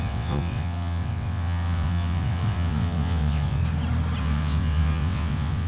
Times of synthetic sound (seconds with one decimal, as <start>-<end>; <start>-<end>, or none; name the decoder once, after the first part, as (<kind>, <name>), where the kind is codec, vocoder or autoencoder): 0.0-3.6 (vocoder, WaveNeXt); 4.2-5.7